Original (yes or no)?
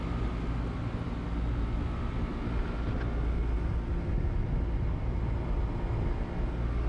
yes